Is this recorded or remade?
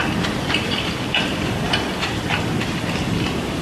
remade